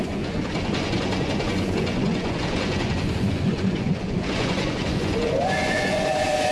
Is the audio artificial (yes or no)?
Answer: yes